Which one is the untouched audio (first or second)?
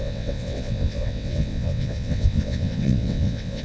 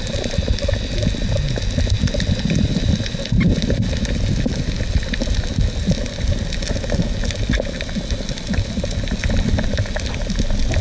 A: second